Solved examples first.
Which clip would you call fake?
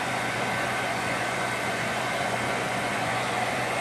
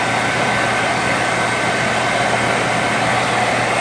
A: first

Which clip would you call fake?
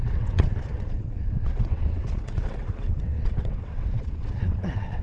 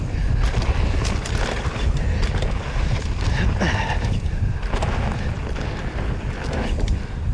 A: first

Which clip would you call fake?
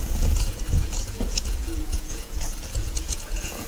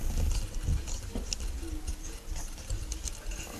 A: first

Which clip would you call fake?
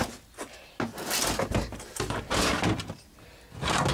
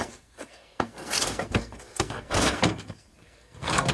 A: second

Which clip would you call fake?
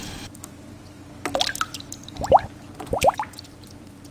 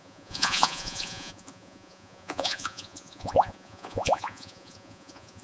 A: second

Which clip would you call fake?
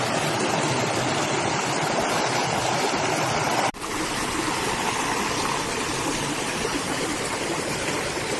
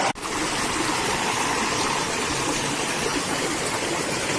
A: first